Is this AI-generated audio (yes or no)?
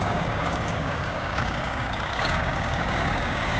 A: yes